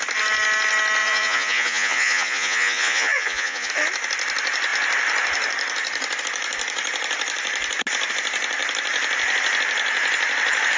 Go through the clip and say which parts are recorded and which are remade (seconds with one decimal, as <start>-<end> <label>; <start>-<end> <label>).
0.0-1.0 recorded; 1.0-3.7 remade; 3.7-10.8 recorded